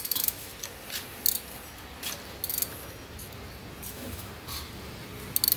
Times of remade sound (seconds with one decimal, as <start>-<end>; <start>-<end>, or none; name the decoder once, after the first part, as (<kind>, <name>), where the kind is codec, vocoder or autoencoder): 0.0-0.5 (autoencoder, DAC-VAE); 3.9-4.3